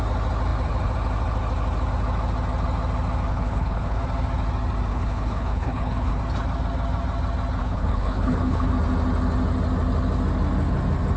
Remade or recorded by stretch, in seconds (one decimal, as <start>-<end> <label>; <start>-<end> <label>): 0.0-3.3 recorded; 3.3-4.0 remade; 4.0-4.9 recorded; 4.9-6.2 remade; 6.2-7.6 recorded; 7.6-8.7 remade; 8.7-11.2 recorded

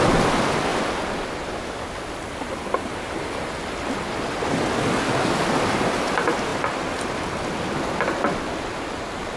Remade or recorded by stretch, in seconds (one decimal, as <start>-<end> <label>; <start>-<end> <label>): 0.0-9.4 recorded

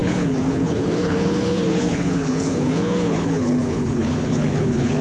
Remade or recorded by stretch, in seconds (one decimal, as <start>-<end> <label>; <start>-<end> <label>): 0.0-5.0 remade